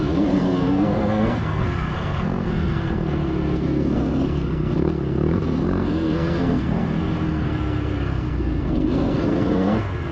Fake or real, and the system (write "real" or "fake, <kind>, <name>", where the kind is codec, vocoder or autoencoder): fake, codec, SNAC